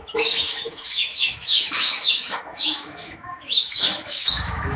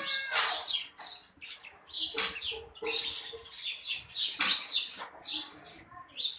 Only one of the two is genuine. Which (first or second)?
second